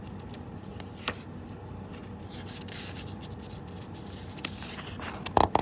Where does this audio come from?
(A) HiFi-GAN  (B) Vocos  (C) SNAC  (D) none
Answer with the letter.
D